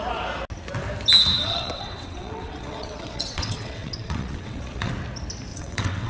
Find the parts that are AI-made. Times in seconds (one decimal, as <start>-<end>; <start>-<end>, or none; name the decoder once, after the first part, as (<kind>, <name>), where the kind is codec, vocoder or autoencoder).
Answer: 1.4-4.9 (vocoder, WaveNeXt); 5.5-6.1

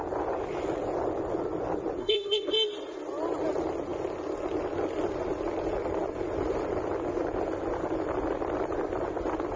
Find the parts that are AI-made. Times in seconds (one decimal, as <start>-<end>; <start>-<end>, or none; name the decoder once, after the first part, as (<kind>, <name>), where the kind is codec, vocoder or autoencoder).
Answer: 2.0-2.5 (codec, SNAC)

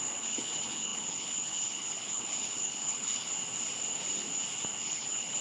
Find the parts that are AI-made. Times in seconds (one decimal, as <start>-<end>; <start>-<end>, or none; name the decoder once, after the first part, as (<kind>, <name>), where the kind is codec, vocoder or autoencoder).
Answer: 0.0-3.3 (codec, HILCodec); 4.8-5.4

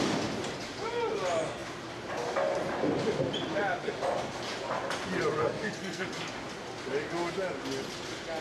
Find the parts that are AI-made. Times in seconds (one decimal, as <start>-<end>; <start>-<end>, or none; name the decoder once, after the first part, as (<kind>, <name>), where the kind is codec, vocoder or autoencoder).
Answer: 5.4-6.1 (codec, SNAC)

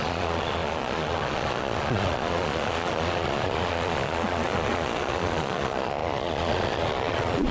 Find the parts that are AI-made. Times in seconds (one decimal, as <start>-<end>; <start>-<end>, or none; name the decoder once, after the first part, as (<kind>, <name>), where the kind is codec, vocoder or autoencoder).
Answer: 0.0-7.5 (vocoder, Vocos)

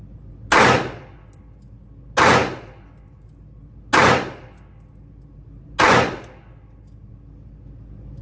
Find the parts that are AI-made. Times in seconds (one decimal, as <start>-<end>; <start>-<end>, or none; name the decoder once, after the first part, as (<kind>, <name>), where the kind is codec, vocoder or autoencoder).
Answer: none

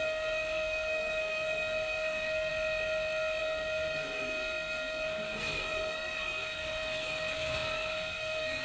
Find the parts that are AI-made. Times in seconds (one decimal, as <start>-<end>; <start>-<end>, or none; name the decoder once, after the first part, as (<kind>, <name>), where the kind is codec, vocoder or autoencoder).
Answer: 0.0-2.5 (codec, SNAC); 3.4-8.6

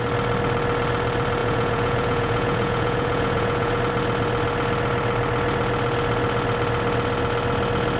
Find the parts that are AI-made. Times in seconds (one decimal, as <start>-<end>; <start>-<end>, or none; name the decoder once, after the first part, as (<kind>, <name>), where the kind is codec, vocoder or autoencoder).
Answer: 1.4-3.8 (vocoder, Vocos)